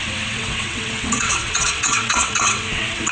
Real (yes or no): no